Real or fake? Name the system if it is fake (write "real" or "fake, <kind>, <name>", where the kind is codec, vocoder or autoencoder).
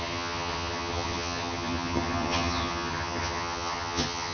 fake, vocoder, HiFi-GAN